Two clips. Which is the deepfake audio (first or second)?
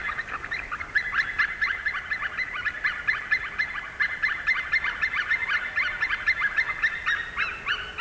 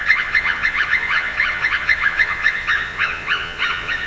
second